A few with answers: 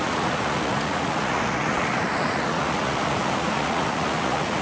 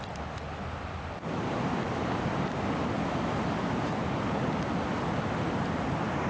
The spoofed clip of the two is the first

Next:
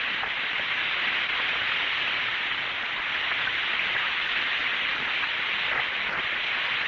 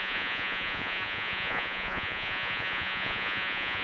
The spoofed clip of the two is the second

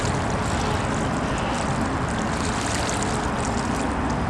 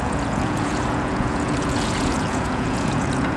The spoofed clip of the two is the second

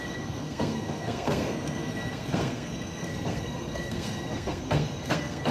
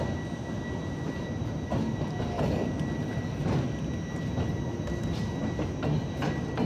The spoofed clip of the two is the first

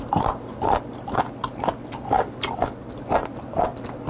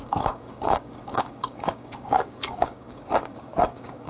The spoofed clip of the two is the second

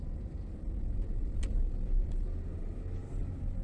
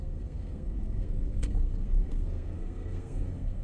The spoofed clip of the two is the second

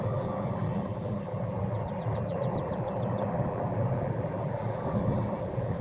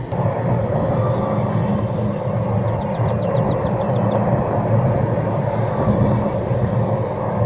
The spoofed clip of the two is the first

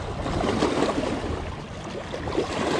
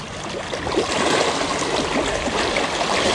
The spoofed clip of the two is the first